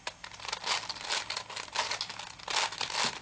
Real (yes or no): yes